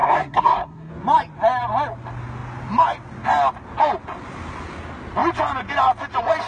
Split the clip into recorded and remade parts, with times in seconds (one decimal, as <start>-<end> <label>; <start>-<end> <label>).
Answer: 0.0-0.9 remade; 0.9-6.5 recorded